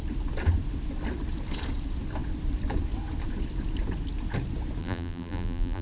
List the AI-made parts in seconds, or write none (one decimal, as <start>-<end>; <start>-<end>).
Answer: 4.8-5.8